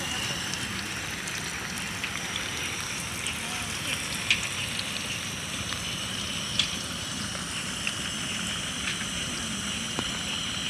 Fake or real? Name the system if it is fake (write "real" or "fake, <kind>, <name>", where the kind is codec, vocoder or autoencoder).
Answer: real